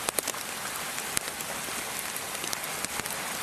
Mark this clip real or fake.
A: real